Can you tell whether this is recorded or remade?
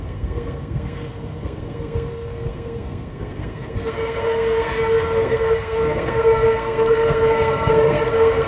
remade